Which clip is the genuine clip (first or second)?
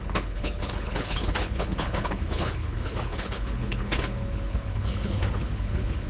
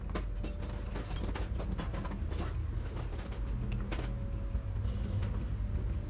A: second